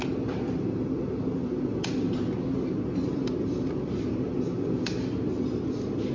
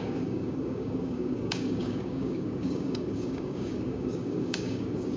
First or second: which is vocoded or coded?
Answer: second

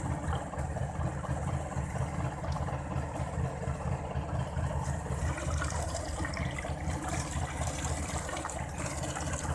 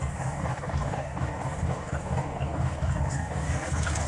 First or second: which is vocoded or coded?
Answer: second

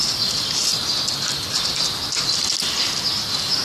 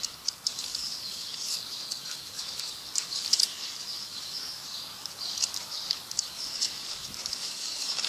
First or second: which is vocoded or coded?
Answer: second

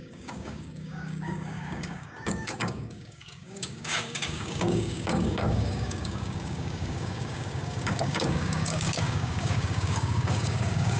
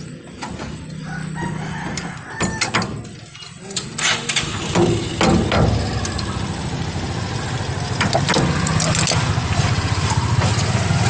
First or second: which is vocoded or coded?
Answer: first